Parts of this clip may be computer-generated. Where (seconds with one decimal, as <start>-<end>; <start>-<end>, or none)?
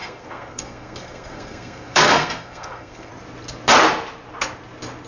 0.0-3.1